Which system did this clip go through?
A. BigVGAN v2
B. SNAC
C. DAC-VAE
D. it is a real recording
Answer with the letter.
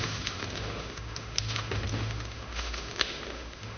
C